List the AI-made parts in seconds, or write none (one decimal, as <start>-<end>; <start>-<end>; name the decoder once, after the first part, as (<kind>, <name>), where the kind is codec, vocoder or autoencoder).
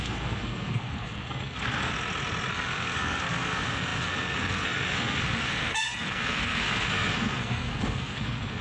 0.0-1.9 (codec, SNAC); 2.5-8.6